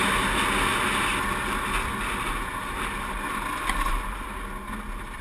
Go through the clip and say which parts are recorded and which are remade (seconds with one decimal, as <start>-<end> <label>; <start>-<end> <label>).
0.0-5.2 recorded